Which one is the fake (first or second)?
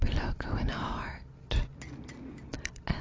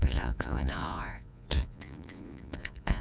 second